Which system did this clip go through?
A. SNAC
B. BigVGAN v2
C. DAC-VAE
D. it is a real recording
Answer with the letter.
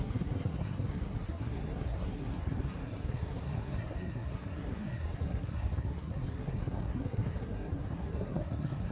A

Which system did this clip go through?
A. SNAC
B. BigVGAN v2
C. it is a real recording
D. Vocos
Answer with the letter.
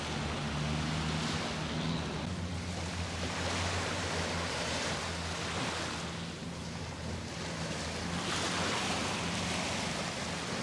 C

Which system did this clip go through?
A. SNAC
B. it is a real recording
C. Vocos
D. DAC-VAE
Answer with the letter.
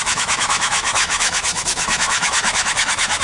D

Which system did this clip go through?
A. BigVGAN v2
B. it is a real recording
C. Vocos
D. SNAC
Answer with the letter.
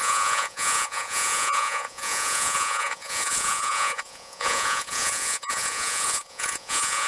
C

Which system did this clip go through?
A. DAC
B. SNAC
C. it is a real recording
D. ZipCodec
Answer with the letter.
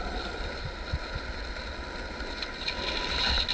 C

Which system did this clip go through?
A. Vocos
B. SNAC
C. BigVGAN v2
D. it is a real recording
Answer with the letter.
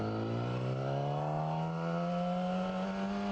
D